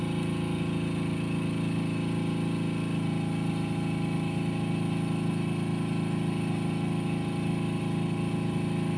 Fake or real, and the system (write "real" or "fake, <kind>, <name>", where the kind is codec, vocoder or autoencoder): real